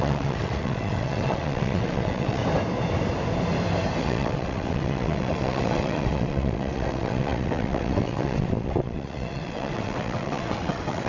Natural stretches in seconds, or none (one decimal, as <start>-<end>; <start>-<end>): 2.4-4.0